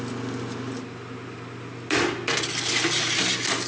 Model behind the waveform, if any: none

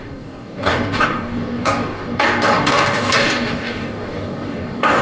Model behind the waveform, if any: codec, DAC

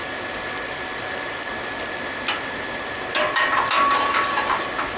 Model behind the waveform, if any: none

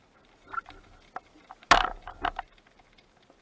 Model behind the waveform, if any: none